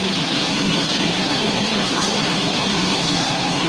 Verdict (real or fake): fake